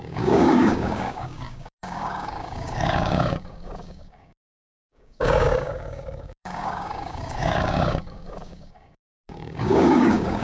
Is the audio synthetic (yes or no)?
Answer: yes